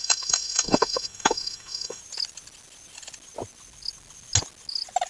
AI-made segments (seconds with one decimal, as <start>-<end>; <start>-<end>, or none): 0.0-2.0